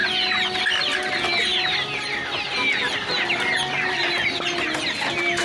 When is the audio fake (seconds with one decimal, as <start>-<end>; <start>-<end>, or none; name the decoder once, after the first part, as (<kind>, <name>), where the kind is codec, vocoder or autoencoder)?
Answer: none